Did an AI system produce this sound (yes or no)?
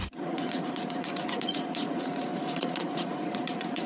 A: yes